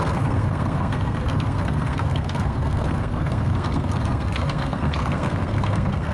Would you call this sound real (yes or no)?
no